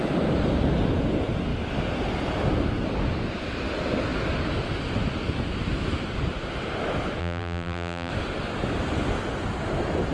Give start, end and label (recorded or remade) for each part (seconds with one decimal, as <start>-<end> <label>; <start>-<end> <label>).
0.0-7.2 recorded; 7.2-8.1 remade; 8.1-10.1 recorded